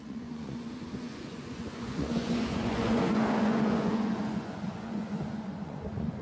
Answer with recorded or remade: remade